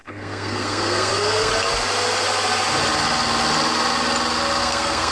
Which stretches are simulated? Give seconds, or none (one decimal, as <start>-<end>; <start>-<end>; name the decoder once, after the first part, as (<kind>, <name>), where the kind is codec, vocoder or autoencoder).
0.0-1.5 (codec, SNAC); 4.6-5.1